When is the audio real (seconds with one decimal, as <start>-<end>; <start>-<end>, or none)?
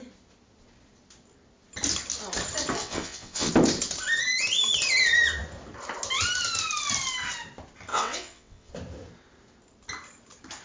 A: 0.0-2.8; 3.5-7.9; 8.7-10.6